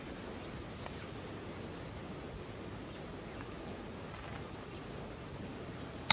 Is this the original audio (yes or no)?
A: yes